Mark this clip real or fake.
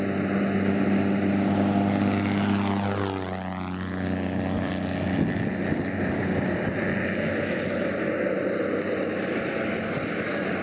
real